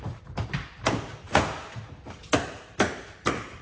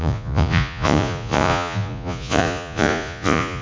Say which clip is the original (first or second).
first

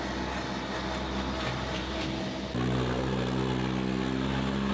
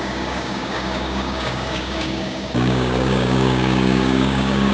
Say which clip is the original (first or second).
first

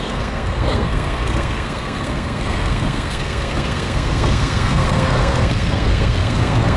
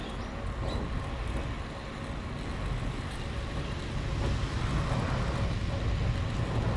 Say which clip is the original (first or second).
second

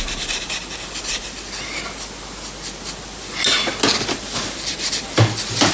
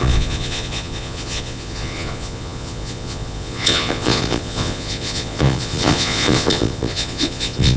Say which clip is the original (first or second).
first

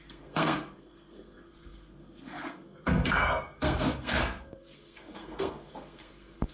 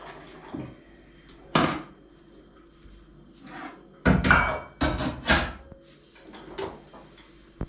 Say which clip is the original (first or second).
second